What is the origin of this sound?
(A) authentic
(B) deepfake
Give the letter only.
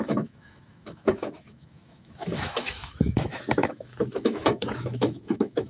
B